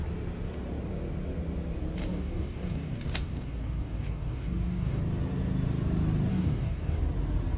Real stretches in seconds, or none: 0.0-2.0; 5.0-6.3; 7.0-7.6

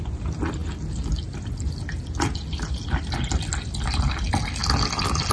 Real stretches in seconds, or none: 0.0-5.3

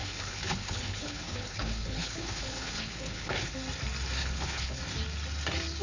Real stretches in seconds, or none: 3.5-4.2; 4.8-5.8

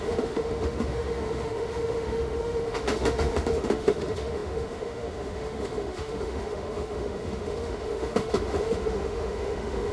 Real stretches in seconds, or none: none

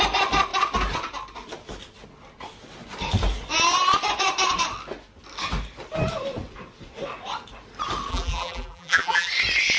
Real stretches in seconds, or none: 0.0-8.1; 9.3-9.8